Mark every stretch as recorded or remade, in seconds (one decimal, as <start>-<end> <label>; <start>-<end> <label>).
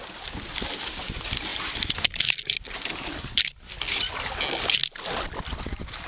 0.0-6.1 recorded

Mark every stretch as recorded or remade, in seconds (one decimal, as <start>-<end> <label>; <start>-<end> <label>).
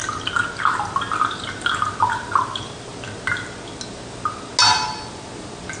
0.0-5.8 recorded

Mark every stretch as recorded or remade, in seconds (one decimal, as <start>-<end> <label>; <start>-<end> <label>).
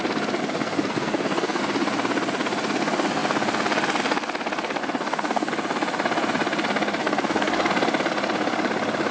0.0-0.4 recorded; 0.4-1.6 remade; 1.6-4.8 recorded; 4.8-5.5 remade; 5.5-7.0 recorded; 7.0-7.7 remade; 7.7-9.1 recorded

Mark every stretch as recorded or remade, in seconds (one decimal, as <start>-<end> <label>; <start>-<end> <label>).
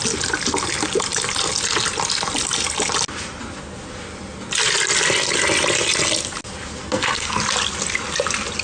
0.0-6.8 recorded; 6.8-7.4 remade; 7.4-8.6 recorded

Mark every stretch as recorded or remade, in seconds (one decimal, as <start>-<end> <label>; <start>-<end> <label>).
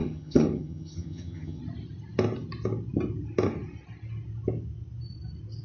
0.0-1.6 remade; 1.6-5.6 recorded